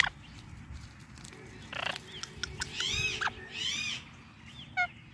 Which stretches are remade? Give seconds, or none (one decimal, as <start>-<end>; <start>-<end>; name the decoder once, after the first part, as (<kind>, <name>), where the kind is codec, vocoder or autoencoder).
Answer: none